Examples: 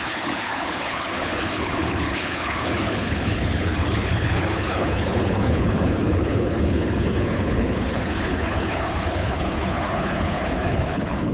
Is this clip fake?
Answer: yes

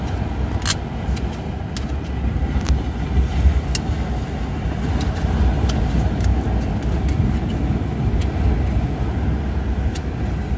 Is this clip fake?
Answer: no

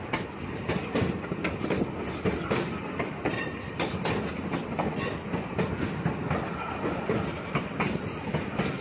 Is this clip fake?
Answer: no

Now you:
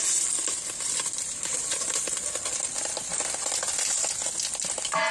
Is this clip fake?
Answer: no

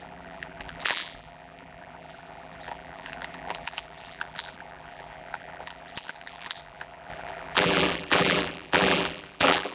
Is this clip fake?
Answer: yes